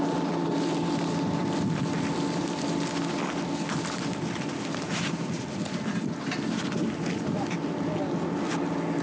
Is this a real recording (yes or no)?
yes